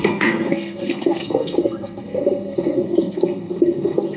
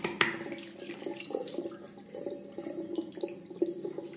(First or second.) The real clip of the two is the second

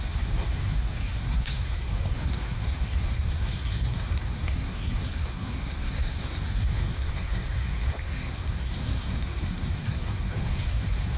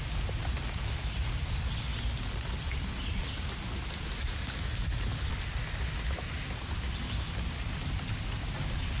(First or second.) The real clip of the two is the second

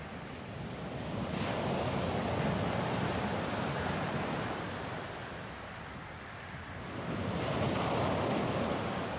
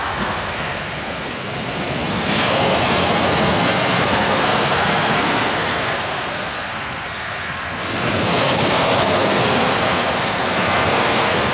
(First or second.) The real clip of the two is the first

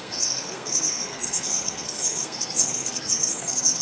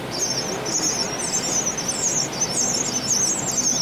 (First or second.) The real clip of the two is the second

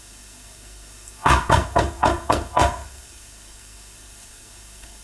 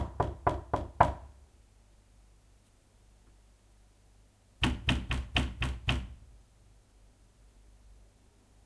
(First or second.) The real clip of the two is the second